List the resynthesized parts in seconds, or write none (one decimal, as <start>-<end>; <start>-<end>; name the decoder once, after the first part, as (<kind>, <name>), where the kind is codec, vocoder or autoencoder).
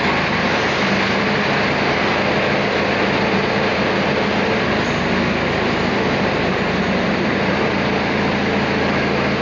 none